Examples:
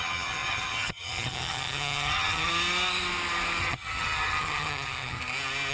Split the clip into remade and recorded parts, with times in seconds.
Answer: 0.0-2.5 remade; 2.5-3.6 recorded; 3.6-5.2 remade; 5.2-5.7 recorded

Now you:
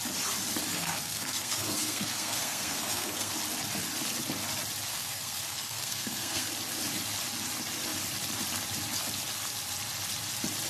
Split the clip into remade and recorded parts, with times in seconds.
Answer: 0.0-0.7 recorded; 0.7-3.3 remade; 3.3-4.9 recorded; 4.9-6.5 remade; 6.5-10.7 recorded

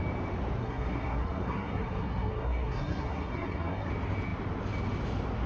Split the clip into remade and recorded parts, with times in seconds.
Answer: 0.0-0.6 recorded; 0.6-3.9 remade; 3.9-5.5 recorded

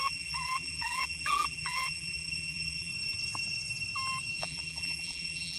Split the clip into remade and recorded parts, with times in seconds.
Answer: 0.0-2.9 remade; 2.9-4.4 recorded; 4.4-5.6 remade

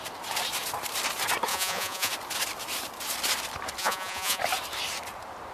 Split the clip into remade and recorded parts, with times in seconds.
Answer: 0.0-1.5 recorded; 1.5-2.1 remade; 2.1-3.8 recorded; 3.8-4.4 remade; 4.4-5.5 recorded